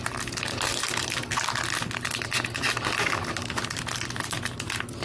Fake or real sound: real